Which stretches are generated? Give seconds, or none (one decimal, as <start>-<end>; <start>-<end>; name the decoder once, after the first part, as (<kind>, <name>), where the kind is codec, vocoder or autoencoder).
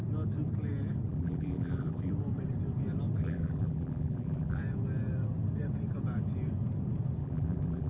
1.1-2.1 (vocoder, BigVGAN v2); 3.2-4.6; 7.2-7.9